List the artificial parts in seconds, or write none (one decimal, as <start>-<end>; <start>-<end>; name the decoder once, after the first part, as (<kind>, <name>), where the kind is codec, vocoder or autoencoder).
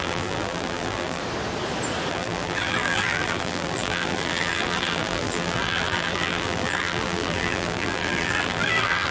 0.0-1.2 (vocoder, BigVGAN v2); 2.1-9.1